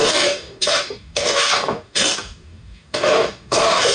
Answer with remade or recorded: remade